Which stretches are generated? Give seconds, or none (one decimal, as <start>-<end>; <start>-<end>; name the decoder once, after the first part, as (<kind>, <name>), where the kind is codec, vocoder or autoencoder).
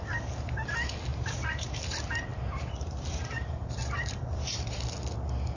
1.1-1.7 (vocoder, BigVGAN v2); 2.3-4.8